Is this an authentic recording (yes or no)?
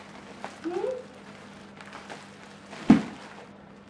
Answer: yes